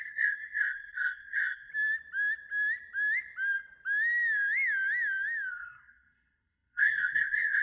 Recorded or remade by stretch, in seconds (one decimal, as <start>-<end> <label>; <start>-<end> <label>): 0.0-1.7 remade; 1.7-5.5 recorded; 5.5-7.6 remade